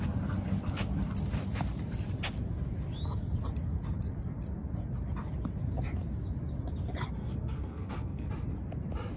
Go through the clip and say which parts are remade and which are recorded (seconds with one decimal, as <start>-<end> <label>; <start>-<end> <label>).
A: 0.0-7.2 recorded; 7.2-8.3 remade; 8.3-9.2 recorded